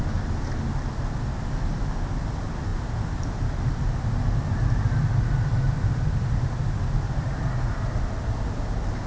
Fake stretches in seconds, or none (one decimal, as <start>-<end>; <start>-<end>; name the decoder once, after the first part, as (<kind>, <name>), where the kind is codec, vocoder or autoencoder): none